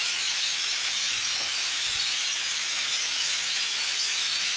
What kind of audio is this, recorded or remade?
remade